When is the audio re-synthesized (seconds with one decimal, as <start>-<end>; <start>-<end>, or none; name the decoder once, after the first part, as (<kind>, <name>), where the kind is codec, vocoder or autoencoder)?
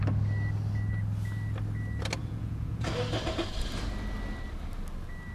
2.2-2.9 (vocoder, Vocos)